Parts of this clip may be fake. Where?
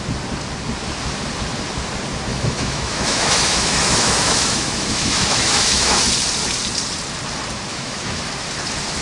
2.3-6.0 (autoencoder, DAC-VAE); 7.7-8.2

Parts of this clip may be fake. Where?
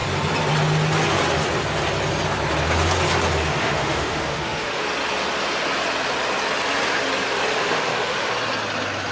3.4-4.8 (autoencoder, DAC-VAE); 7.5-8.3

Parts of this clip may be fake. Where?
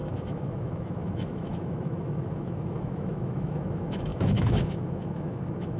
0.0-5.8 (autoencoder, DAC-VAE)